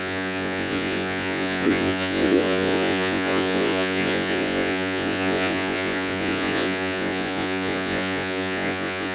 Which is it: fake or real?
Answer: fake